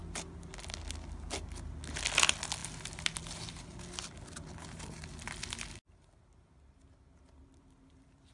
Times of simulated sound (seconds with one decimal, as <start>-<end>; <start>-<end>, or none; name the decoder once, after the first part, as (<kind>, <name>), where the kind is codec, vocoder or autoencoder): none